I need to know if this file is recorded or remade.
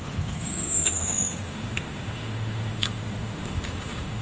remade